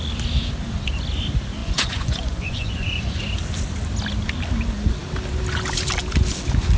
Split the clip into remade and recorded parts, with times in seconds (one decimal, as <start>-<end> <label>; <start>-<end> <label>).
0.0-1.6 recorded; 1.6-3.1 remade; 3.1-6.8 recorded

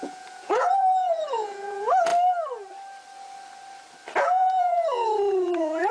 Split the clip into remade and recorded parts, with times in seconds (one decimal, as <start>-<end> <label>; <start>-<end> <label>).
0.0-2.1 remade; 2.1-4.2 recorded; 4.2-5.9 remade

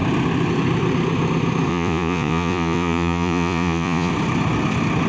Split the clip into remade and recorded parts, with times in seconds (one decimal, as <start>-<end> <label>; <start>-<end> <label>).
0.0-1.7 recorded; 1.7-4.1 remade; 4.1-5.1 recorded

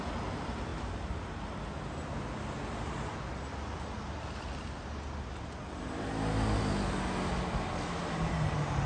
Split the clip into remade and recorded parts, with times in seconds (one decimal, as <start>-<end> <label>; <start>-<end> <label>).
0.0-8.9 recorded

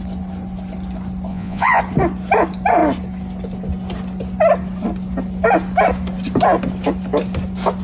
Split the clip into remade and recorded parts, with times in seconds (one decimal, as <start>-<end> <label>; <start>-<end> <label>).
0.0-1.3 recorded; 1.3-1.8 remade; 1.8-7.8 recorded